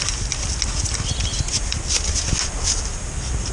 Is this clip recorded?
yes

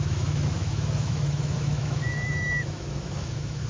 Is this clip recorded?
no